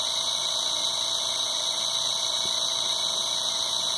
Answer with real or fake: real